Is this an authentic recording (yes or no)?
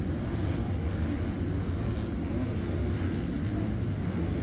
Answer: yes